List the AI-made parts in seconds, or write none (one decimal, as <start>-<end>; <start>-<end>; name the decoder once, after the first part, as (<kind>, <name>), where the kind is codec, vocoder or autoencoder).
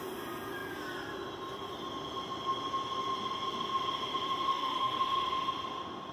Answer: 4.5-5.0 (codec, SNAC)